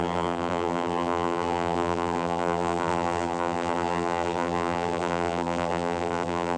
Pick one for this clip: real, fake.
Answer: fake